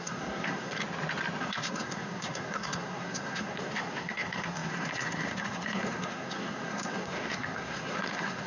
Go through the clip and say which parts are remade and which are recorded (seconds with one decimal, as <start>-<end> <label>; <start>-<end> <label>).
0.0-0.8 remade; 0.8-1.4 recorded; 1.4-8.5 remade